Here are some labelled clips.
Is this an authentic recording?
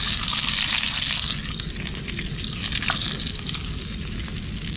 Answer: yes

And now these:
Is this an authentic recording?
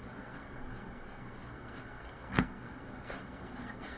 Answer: no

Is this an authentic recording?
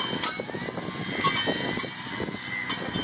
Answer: yes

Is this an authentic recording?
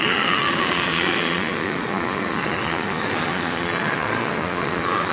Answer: no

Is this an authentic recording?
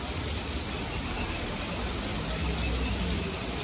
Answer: yes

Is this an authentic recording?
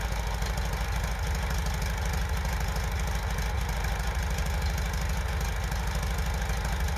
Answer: yes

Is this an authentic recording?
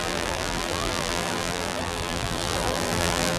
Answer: no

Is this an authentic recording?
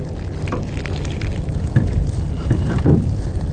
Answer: yes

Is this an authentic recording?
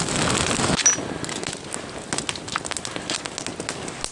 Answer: yes